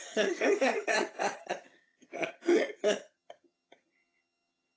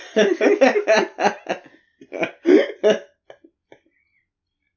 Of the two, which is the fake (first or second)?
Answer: first